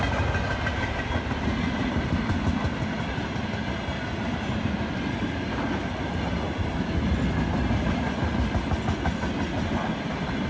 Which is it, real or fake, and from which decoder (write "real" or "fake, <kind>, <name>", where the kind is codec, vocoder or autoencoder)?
real